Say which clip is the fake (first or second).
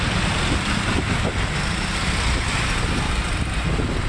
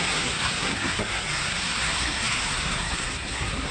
second